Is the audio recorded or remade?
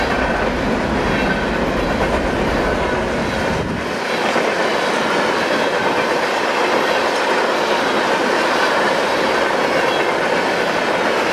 recorded